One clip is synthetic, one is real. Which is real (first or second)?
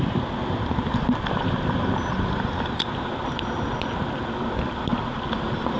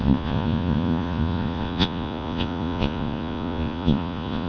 first